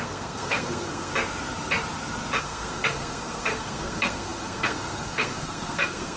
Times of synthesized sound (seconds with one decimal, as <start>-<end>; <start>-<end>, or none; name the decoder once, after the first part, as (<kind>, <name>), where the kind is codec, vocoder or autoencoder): 0.0-1.1 (codec, SNAC); 2.4-6.2